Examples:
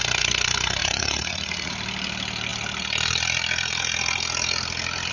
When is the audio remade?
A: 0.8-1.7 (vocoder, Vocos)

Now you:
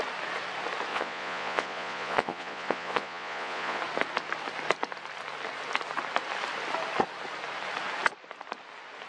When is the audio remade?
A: 0.9-3.8 (vocoder, Vocos)

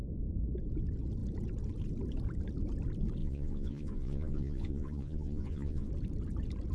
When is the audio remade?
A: 3.2-5.9 (vocoder, Vocos)